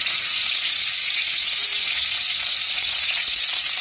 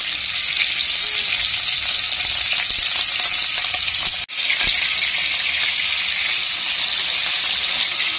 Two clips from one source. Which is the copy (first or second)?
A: first